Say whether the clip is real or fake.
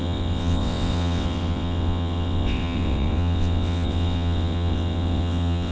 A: fake